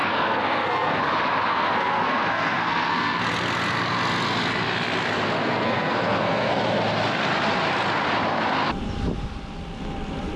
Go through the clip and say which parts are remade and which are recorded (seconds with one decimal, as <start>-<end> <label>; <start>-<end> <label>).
0.0-1.0 remade; 1.0-1.5 recorded; 1.5-3.2 remade; 3.2-5.4 recorded; 5.4-6.6 remade; 6.6-10.4 recorded